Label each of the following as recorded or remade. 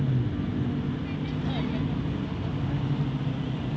recorded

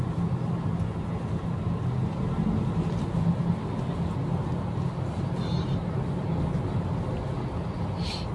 recorded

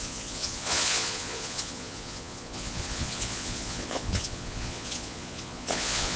remade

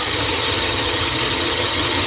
remade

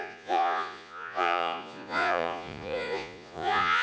remade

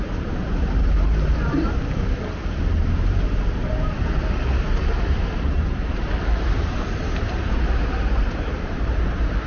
remade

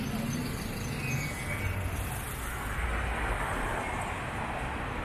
recorded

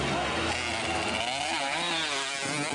recorded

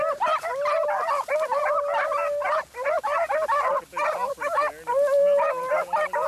recorded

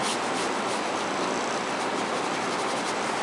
recorded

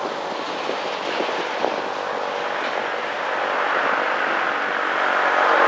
recorded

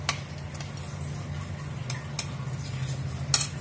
recorded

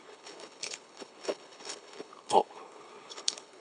remade